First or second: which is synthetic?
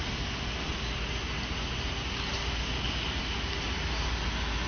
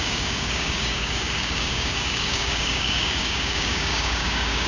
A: second